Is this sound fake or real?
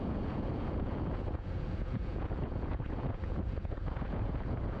fake